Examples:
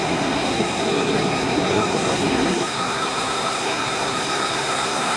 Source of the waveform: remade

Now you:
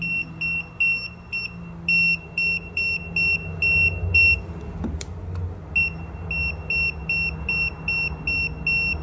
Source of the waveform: recorded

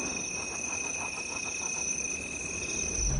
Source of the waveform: recorded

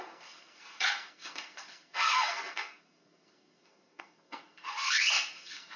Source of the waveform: remade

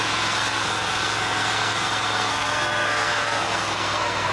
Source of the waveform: remade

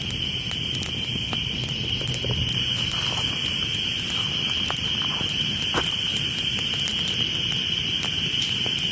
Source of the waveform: recorded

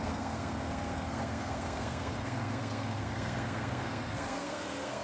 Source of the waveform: remade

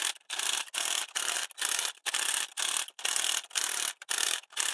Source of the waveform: recorded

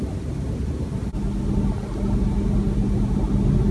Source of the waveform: recorded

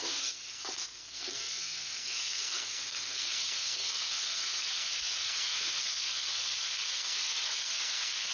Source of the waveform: remade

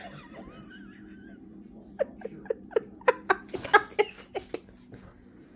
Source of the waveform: recorded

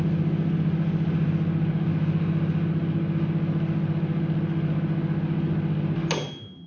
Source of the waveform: recorded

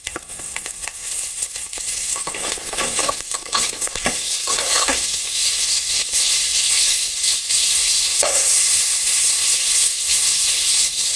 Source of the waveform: remade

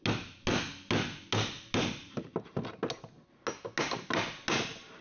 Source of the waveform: recorded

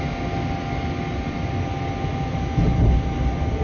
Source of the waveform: recorded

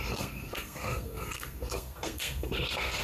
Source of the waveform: remade